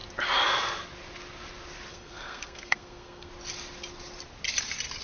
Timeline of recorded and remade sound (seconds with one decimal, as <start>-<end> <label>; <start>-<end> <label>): 0.0-1.9 recorded; 1.9-3.3 remade; 3.3-5.0 recorded